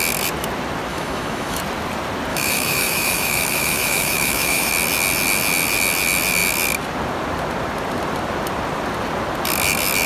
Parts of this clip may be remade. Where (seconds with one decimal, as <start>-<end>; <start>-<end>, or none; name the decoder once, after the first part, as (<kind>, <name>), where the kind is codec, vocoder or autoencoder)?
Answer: 0.9-1.6 (autoencoder, DAC-VAE); 2.3-4.7